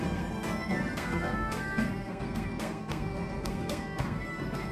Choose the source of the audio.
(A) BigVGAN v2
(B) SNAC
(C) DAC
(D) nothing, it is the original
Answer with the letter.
B